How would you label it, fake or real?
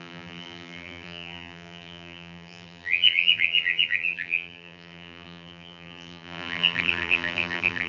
fake